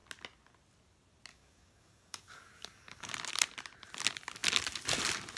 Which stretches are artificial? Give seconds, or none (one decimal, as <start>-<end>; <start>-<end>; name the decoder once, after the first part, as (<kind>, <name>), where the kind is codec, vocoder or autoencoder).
1.3-3.1 (codec, DAC)